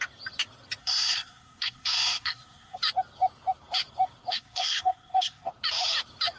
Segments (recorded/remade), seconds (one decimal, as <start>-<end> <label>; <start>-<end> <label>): 0.0-0.8 recorded; 0.8-2.8 remade; 2.8-4.3 recorded; 4.3-5.5 remade; 5.5-6.4 recorded